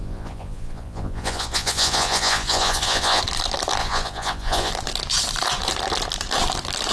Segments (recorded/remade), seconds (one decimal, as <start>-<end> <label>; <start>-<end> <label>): 0.0-3.2 remade; 3.2-3.8 recorded; 3.8-4.7 remade; 4.7-6.9 recorded